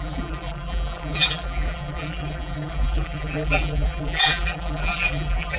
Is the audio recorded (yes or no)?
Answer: no